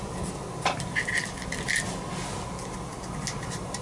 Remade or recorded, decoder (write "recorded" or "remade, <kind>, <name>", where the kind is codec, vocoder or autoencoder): recorded